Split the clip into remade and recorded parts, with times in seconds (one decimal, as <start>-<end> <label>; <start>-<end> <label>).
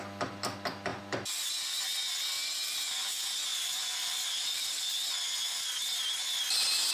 0.0-3.5 recorded; 3.5-4.7 remade; 4.7-6.9 recorded